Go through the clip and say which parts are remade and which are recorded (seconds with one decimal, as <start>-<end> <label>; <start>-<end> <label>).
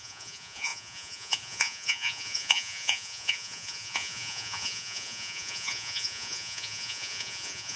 0.0-7.8 remade